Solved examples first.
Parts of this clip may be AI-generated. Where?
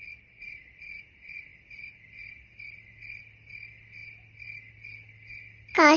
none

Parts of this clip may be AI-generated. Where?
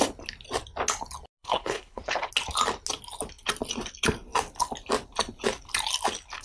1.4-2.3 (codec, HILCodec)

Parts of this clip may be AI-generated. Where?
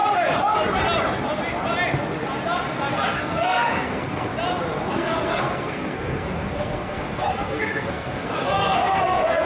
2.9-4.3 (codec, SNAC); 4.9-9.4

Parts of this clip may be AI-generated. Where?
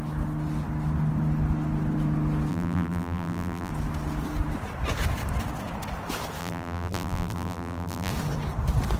2.5-3.7 (vocoder, BigVGAN v2); 6.4-8.1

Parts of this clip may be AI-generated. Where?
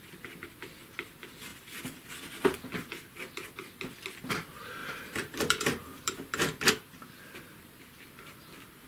4.8-6.7 (vocoder, BigVGAN v2)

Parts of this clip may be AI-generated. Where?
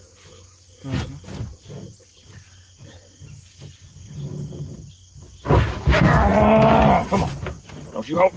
none